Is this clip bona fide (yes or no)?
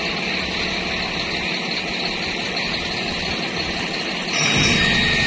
yes